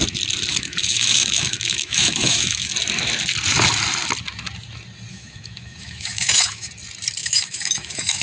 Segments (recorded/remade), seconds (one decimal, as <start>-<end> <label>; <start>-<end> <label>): 0.0-0.5 recorded; 0.5-2.7 remade; 2.7-5.1 recorded; 5.1-6.7 remade; 6.7-7.2 recorded; 7.2-8.2 remade